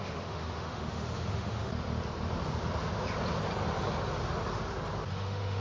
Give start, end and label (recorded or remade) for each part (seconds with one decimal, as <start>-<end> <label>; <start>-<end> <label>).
0.0-1.7 remade; 1.7-5.1 recorded; 5.1-5.6 remade